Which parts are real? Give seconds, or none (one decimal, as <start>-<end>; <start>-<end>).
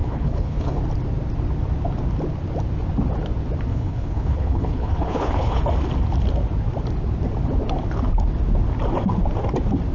0.8-3.7; 5.6-9.9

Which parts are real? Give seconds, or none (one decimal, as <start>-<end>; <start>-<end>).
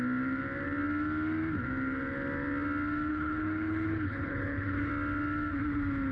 0.0-3.1; 4.9-6.1